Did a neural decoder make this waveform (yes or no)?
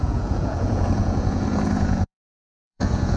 yes